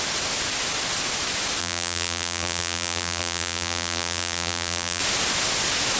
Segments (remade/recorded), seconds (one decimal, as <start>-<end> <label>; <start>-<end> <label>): 0.0-1.6 recorded; 1.6-5.0 remade; 5.0-6.0 recorded